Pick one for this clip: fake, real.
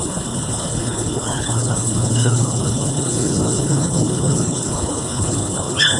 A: fake